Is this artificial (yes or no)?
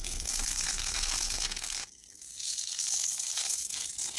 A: yes